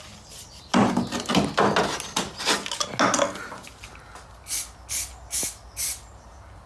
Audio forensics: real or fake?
real